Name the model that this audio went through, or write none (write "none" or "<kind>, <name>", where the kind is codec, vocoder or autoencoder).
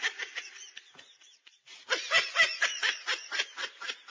none